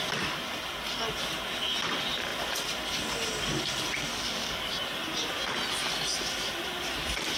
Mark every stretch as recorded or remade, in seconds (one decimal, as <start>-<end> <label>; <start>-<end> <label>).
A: 0.0-4.1 recorded; 4.1-4.7 remade; 4.7-7.4 recorded